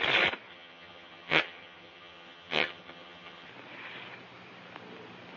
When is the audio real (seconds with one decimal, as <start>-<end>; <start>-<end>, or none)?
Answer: 0.0-0.5; 3.5-5.4

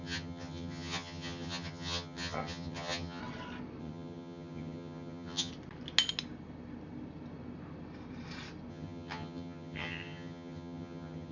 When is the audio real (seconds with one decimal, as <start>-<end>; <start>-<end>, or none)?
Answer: 3.2-3.8; 5.5-8.7